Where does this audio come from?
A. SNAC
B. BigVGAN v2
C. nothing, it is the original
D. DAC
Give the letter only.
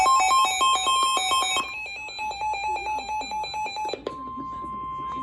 C